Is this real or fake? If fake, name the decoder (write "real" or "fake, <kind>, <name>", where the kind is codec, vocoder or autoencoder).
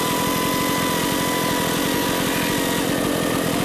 real